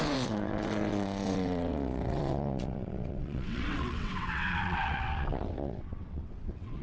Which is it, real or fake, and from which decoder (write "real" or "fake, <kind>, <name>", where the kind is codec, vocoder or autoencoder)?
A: fake, vocoder, WaveNeXt